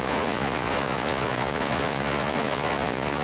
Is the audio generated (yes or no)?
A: yes